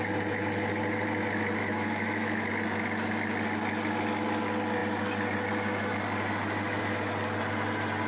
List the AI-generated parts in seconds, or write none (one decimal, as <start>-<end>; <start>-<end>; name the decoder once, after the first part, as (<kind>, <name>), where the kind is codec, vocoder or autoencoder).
1.6-2.5 (autoencoder, DAC-VAE)